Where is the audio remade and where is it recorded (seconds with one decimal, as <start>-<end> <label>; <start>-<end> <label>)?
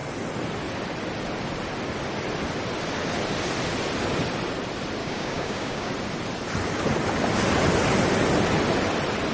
0.0-5.0 recorded; 5.0-5.9 remade; 5.9-9.3 recorded